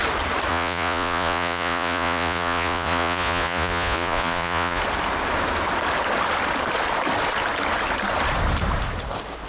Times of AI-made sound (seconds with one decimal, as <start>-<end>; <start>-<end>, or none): 0.5-4.8